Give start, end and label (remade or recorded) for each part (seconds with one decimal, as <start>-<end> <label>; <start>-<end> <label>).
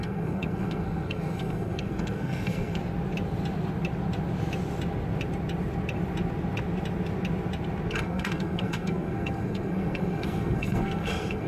0.0-2.8 remade; 2.8-7.9 recorded; 7.9-11.5 remade